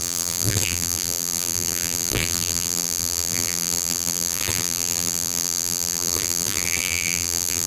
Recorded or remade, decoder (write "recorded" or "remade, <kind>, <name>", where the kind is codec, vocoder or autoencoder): remade, vocoder, BigVGAN v2